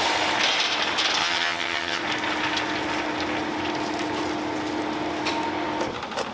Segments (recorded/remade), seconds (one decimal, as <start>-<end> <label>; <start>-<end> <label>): 0.0-1.2 recorded; 1.2-2.0 remade; 2.0-6.3 recorded